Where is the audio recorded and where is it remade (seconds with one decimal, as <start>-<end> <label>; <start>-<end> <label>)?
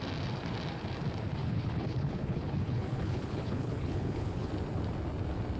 0.0-1.4 recorded; 1.4-4.5 remade; 4.5-5.6 recorded